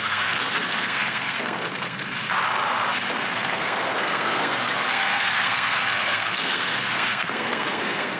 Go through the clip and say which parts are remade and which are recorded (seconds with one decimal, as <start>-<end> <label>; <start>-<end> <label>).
0.0-2.2 remade; 2.2-3.2 recorded; 3.2-8.2 remade